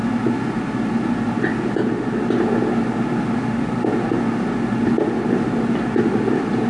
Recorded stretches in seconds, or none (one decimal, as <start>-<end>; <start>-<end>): 0.0-6.7